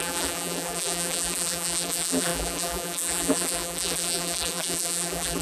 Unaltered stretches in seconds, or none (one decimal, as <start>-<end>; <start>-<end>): none